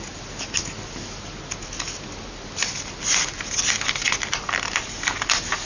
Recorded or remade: recorded